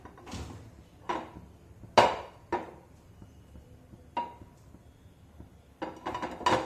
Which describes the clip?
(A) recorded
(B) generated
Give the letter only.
A